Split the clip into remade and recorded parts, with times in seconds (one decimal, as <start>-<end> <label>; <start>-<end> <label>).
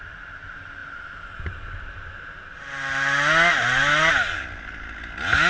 0.0-5.5 recorded